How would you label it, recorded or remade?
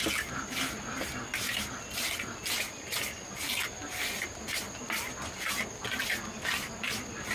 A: recorded